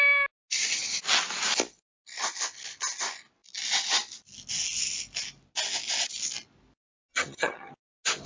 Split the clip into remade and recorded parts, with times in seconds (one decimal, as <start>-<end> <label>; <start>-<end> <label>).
0.0-7.1 recorded; 7.1-7.7 remade; 7.7-8.3 recorded